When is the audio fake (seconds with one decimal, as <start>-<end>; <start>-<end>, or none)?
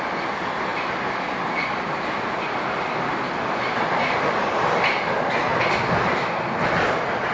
none